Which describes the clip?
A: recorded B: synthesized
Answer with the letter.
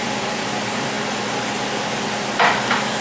A